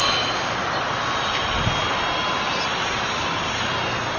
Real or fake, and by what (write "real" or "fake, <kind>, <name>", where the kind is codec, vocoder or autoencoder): real